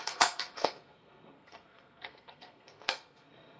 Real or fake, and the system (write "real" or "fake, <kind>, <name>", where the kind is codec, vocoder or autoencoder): fake, codec, SNAC